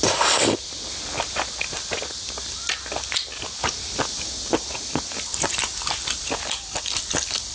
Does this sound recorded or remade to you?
recorded